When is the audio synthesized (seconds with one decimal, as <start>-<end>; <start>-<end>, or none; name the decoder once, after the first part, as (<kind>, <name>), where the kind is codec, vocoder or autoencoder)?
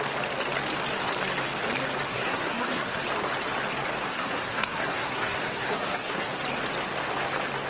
2.1-3.0 (codec, SNAC); 4.1-6.4